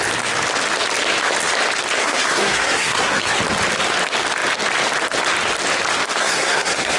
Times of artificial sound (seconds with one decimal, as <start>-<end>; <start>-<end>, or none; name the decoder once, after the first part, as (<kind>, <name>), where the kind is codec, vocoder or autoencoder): 2.0-3.4 (codec, SNAC); 6.2-7.0